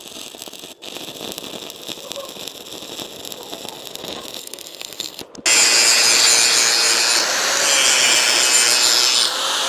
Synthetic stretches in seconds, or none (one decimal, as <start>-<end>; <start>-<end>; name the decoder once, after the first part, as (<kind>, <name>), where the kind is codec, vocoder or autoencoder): 4.4-5.2 (codec, SNAC)

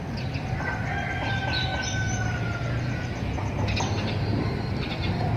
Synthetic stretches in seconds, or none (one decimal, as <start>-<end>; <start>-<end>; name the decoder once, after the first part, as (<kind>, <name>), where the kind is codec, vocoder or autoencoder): none

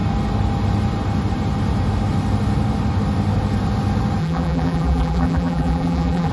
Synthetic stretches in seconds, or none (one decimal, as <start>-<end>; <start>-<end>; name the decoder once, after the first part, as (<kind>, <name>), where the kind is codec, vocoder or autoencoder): 4.2-6.3 (vocoder, BigVGAN v2)

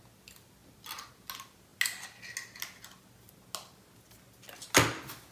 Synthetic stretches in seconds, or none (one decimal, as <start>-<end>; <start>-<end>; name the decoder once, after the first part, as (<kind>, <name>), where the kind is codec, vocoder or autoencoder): none

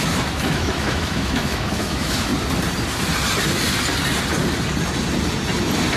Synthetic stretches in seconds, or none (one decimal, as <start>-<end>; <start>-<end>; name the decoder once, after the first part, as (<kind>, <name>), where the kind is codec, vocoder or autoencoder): 0.0-2.3 (autoencoder, DAC-VAE)

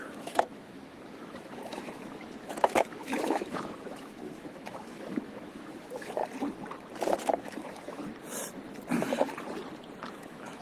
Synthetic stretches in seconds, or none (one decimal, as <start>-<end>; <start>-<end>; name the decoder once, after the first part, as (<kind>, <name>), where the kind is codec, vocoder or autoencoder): 0.0-6.2 (autoencoder, DAC-VAE); 7.4-8.0; 10.1-10.6